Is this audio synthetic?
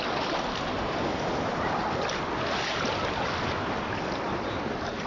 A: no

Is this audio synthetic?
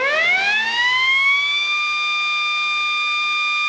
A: no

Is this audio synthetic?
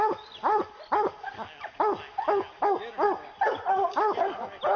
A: no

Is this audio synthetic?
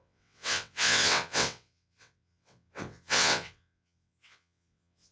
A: yes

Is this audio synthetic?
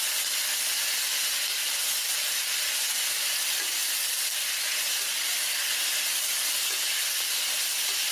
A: no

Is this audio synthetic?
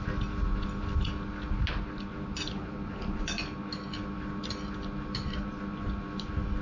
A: no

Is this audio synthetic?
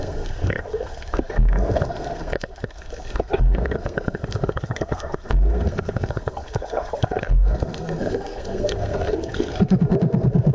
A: yes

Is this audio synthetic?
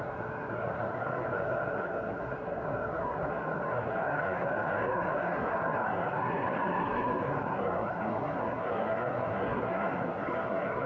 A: yes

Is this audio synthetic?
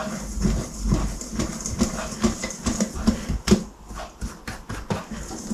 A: no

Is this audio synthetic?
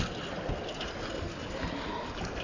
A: no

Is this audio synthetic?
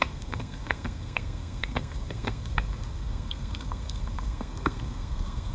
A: yes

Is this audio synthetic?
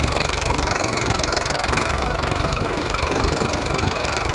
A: yes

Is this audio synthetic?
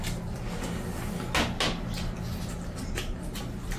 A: no